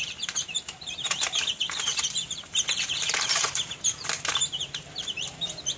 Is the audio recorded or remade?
remade